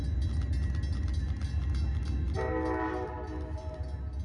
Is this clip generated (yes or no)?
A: no